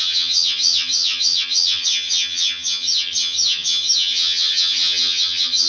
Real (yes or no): no